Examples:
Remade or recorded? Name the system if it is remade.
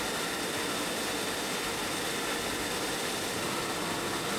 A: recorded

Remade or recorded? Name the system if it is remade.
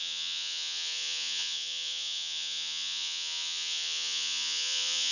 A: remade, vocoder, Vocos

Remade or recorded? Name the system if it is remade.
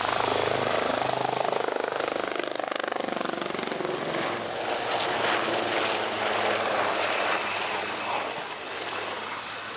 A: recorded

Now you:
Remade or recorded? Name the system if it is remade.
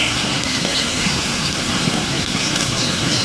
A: remade, codec, SNAC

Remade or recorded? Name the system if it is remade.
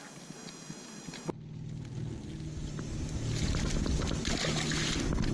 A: recorded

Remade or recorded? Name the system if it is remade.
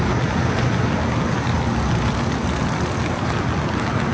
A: recorded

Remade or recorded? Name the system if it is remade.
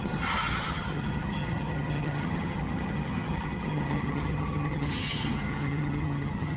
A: remade, vocoder, HiFi-GAN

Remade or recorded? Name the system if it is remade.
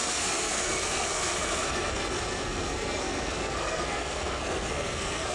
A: remade, codec, SNAC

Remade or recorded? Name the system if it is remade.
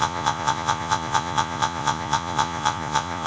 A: remade, vocoder, Vocos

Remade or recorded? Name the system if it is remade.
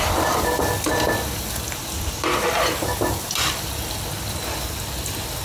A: recorded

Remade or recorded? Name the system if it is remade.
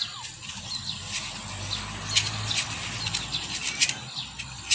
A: recorded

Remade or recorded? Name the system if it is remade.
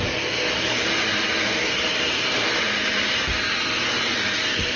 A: recorded